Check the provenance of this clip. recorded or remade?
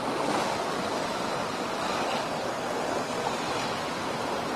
recorded